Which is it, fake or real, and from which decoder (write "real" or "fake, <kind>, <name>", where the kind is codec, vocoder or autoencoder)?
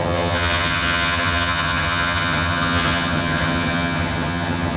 fake, vocoder, HiFi-GAN